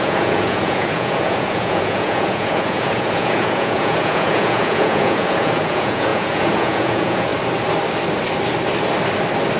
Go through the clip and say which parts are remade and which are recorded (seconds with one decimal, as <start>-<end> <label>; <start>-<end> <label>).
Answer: 0.0-7.3 remade; 7.3-9.6 recorded